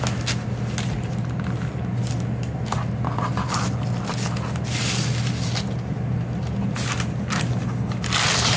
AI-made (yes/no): no